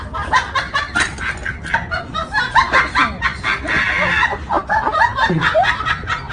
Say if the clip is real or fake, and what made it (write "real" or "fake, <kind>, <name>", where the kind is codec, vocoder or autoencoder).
real